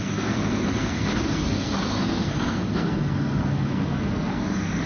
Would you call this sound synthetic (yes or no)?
yes